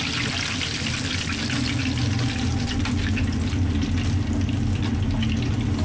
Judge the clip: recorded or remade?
recorded